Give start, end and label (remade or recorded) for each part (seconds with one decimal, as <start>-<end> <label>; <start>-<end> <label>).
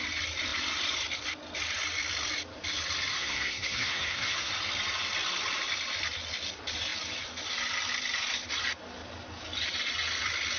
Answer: 0.0-3.1 recorded; 3.1-4.5 remade; 4.5-10.6 recorded